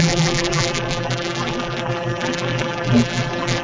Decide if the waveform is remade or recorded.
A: remade